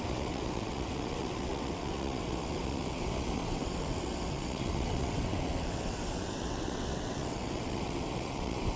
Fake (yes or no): yes